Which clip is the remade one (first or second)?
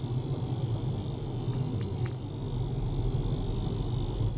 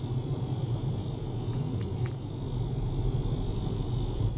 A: second